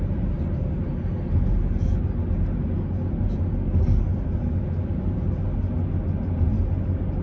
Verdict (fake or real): real